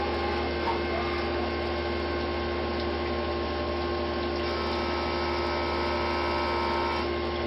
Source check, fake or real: real